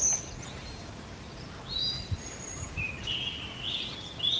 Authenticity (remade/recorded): recorded